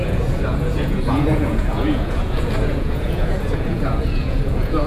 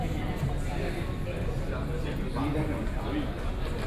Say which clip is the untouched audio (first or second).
second